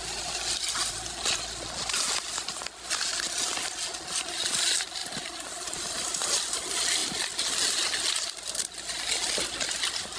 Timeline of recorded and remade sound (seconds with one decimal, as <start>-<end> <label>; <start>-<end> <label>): 0.0-10.2 recorded